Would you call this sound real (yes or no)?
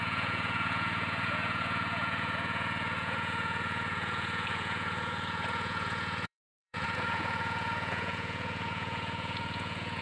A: no